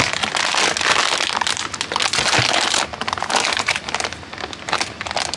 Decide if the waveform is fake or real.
real